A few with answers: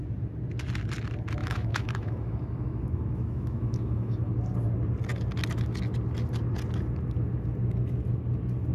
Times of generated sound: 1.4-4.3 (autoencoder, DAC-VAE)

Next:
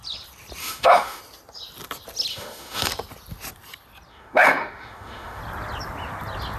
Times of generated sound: 0.6-1.2 (autoencoder, DAC-VAE); 2.3-2.9; 4.1-5.4

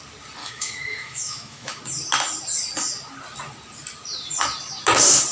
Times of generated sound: 0.4-1.8 (autoencoder, DAC-VAE)

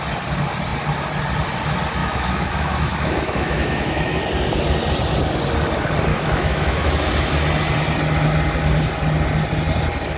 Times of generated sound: 2.0-4.2 (autoencoder, DAC-VAE); 6.1-7.1